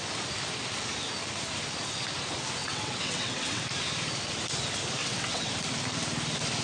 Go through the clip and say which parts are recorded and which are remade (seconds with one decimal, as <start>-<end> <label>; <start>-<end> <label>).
0.0-2.6 recorded; 2.6-3.6 remade; 3.6-5.0 recorded; 5.0-5.5 remade; 5.5-6.6 recorded